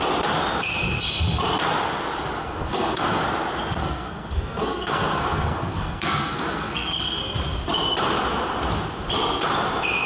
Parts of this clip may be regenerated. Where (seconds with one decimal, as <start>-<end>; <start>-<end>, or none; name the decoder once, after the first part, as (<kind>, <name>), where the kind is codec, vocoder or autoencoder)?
2.4-3.2 (codec, SNAC); 3.8-7.2